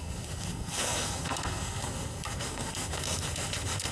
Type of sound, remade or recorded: remade